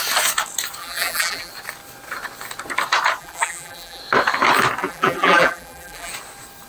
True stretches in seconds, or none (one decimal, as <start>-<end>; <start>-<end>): 0.0-0.8; 1.5-3.2; 4.0-4.8; 6.1-6.7